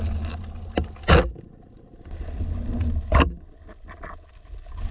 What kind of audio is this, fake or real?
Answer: real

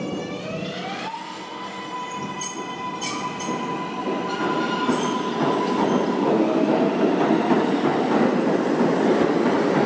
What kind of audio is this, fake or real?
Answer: real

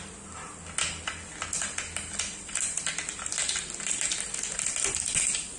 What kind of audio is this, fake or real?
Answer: real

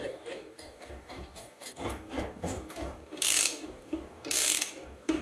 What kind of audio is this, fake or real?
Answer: fake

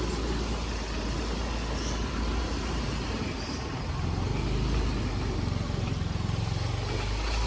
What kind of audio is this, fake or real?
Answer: real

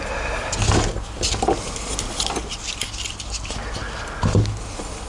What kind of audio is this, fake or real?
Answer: real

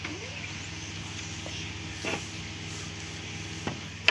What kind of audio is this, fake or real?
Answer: real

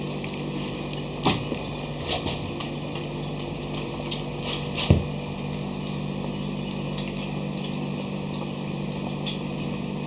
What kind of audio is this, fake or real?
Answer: real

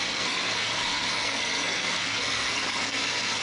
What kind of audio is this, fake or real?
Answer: fake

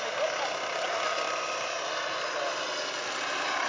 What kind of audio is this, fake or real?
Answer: real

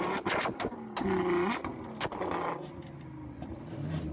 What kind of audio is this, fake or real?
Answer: real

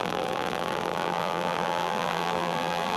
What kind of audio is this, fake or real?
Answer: fake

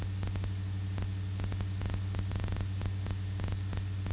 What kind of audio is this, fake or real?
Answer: real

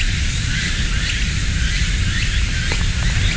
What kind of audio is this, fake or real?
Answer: real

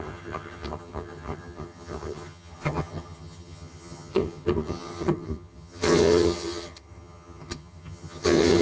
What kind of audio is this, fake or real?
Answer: fake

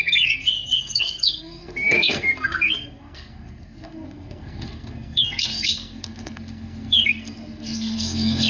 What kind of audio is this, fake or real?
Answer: fake